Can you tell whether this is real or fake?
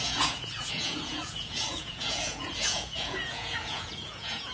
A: fake